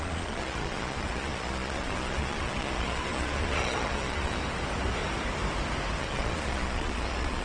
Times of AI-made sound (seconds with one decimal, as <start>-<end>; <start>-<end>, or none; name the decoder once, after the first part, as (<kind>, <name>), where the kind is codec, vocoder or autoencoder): 0.0-4.4 (vocoder, Vocos); 6.0-7.4